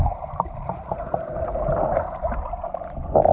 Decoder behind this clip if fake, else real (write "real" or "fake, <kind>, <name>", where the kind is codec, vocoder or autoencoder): real